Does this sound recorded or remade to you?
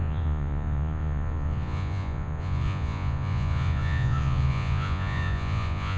remade